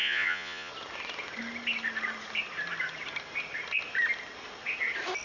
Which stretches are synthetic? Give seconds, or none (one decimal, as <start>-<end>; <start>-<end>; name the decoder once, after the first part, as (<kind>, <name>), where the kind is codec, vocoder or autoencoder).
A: 0.0-0.7 (vocoder, Vocos)